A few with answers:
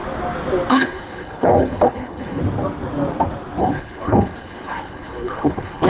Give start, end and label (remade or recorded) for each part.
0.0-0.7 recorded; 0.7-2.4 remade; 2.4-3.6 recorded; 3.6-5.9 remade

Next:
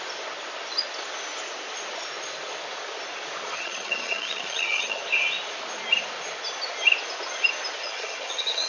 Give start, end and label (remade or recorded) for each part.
0.0-3.5 recorded; 3.5-5.0 remade; 5.0-7.8 recorded; 7.8-8.7 remade